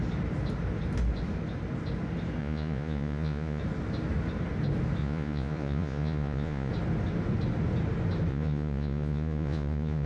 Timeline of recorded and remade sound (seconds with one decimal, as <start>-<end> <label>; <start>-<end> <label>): 0.0-2.4 recorded; 2.4-3.6 remade; 3.6-5.0 recorded; 5.0-6.7 remade; 6.7-8.3 recorded; 8.3-10.1 remade